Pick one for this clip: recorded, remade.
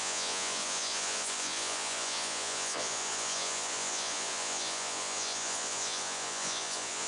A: remade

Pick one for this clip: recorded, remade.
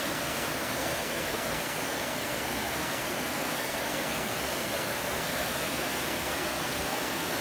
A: remade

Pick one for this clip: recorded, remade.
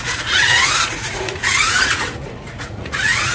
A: remade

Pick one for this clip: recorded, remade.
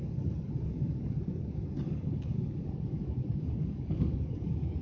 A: remade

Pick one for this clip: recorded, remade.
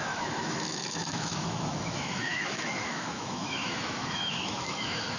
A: remade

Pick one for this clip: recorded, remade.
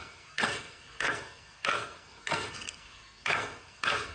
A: remade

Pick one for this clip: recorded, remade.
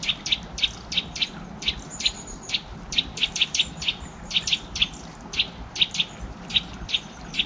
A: recorded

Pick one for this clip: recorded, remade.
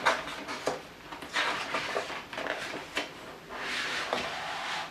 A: recorded